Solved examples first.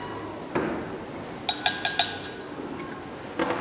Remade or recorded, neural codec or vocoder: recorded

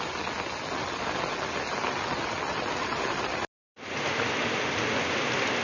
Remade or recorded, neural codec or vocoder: recorded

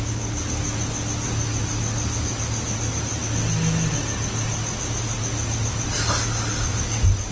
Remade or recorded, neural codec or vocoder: recorded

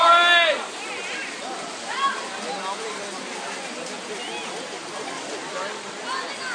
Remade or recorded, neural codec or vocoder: recorded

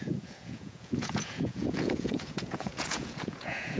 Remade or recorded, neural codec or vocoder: remade, vocoder, Vocos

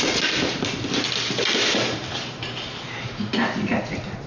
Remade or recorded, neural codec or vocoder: recorded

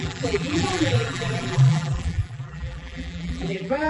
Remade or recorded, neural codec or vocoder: remade, vocoder, BigVGAN v2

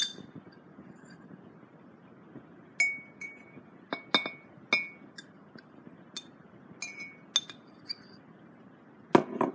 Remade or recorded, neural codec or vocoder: recorded